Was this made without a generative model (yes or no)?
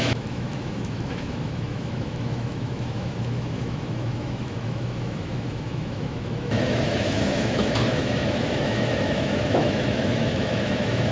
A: no